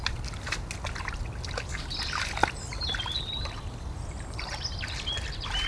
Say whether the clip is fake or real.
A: real